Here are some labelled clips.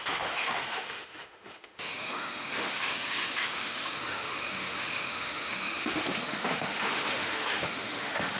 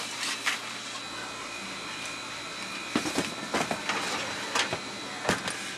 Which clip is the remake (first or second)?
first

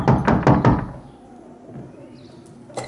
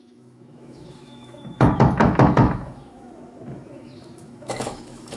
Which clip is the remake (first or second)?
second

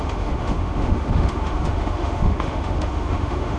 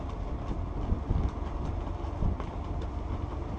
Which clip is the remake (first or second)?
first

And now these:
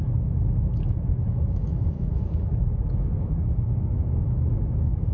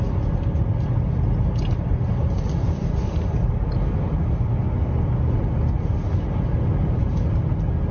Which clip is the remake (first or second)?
first